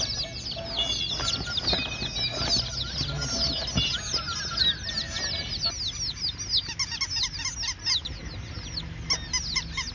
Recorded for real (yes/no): yes